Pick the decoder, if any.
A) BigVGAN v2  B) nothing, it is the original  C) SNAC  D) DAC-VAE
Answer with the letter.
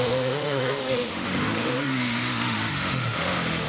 D